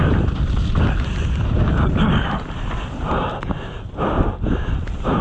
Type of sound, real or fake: real